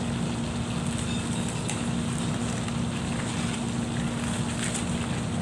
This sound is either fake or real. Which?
real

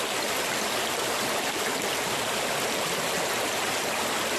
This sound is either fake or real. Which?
real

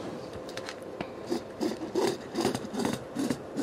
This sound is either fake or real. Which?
fake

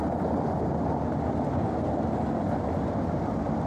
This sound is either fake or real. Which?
real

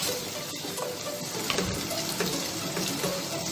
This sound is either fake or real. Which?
real